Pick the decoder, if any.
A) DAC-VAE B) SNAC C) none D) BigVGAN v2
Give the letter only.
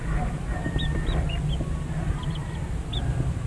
C